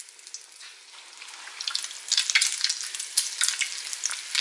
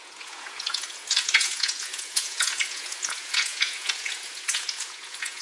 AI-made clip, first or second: second